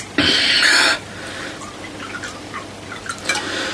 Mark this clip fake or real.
real